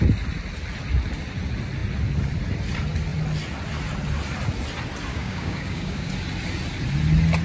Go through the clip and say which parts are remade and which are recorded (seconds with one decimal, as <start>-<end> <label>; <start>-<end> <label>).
0.0-5.1 recorded; 5.1-6.1 remade; 6.1-7.4 recorded